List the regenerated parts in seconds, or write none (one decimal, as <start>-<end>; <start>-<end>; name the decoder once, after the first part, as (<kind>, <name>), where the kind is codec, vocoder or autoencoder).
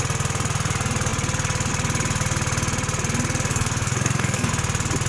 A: 3.5-4.5 (codec, SNAC)